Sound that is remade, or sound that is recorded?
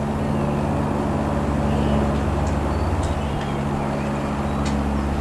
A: recorded